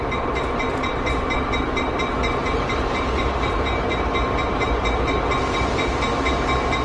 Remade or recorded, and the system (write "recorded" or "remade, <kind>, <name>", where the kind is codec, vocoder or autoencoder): remade, vocoder, BigVGAN v2